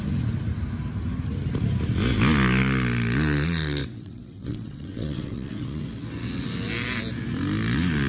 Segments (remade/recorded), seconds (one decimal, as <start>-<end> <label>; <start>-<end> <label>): 0.0-3.8 recorded; 3.8-5.8 remade; 5.8-8.1 recorded